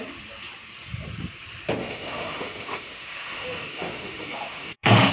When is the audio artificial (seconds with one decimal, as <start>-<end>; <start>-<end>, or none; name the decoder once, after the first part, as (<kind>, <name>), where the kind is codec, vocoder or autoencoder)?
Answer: 1.8-5.1 (autoencoder, DAC-VAE)